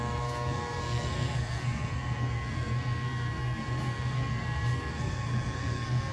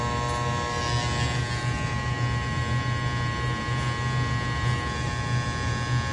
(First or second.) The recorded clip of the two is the second